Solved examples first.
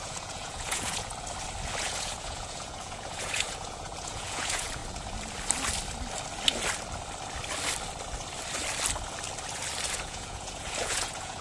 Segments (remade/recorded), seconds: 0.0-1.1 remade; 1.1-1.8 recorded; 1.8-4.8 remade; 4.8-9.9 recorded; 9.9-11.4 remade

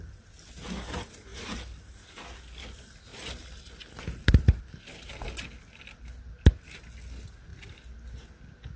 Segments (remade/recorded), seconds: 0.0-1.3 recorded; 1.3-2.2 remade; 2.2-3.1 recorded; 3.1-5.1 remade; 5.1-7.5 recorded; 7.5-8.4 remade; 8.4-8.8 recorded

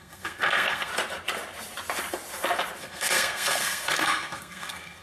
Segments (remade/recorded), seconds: 0.0-0.9 remade; 0.9-2.8 recorded; 2.8-5.0 remade

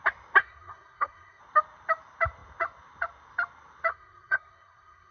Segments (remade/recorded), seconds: 0.0-0.4 recorded; 0.4-1.4 remade; 1.4-3.9 recorded; 3.9-5.1 remade